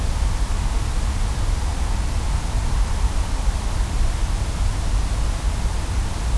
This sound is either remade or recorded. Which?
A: recorded